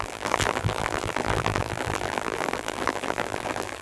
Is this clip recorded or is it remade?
remade